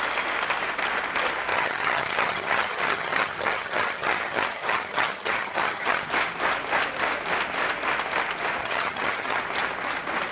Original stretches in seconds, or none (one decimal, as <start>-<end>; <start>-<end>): 0.0-1.5; 6.1-8.6; 9.4-10.3